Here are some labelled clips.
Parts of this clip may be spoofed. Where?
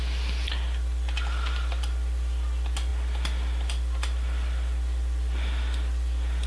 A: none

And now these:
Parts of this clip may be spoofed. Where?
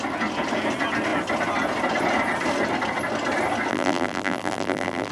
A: 3.7-5.1 (vocoder, BigVGAN v2)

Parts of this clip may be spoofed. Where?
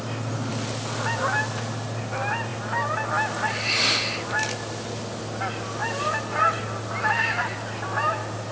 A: none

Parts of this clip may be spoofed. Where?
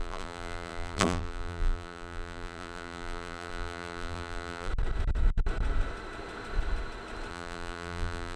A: 0.0-4.7 (vocoder, BigVGAN v2); 7.3-8.4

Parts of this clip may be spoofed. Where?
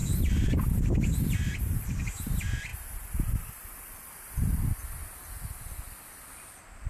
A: 0.0-2.7 (vocoder, BigVGAN v2); 3.5-4.8; 5.8-6.9